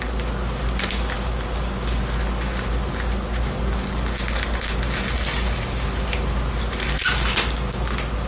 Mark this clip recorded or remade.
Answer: recorded